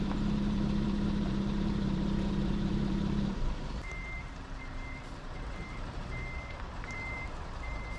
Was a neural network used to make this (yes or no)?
yes